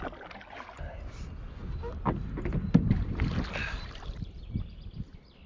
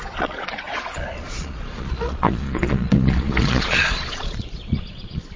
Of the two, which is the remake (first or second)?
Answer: second